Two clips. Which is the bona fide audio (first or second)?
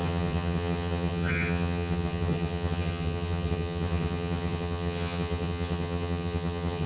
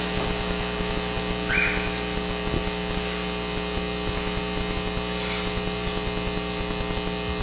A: second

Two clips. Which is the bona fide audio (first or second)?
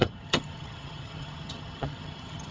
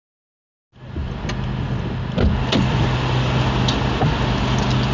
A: second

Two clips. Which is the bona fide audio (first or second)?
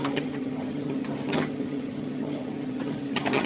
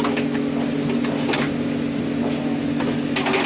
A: second